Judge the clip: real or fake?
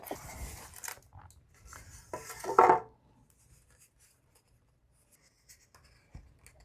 real